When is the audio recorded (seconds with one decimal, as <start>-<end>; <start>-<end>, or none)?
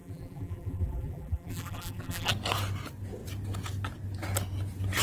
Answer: 2.3-5.0